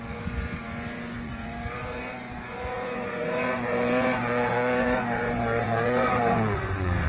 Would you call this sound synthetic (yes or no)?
yes